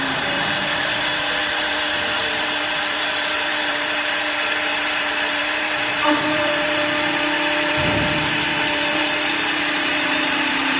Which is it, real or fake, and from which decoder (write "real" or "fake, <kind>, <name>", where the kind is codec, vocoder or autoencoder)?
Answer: fake, vocoder, BigVGAN v2